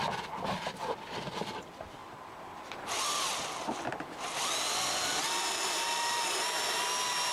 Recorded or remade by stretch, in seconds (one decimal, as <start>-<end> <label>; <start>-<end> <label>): 0.0-7.3 recorded